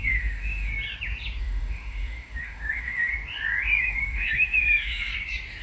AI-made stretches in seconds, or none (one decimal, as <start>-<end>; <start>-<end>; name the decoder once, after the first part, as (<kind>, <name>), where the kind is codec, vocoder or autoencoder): 0.0-0.7 (autoencoder, DAC-VAE); 1.4-3.1; 3.8-5.1